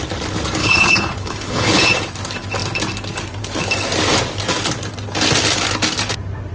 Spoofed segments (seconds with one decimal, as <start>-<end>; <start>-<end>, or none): 0.6-1.9